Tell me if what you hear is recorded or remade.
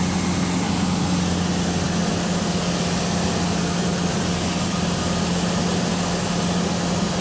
recorded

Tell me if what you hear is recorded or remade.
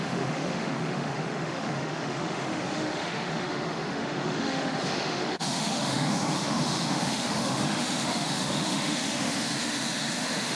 remade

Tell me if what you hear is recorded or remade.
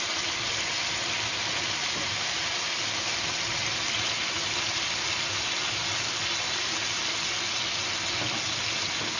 recorded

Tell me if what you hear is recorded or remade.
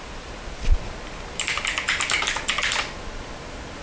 recorded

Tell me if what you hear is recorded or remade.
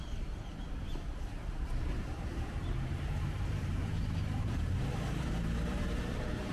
remade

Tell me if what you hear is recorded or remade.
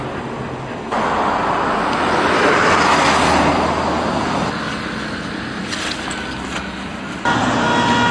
recorded